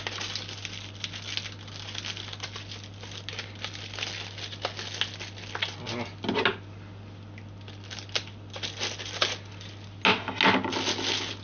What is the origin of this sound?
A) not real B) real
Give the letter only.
B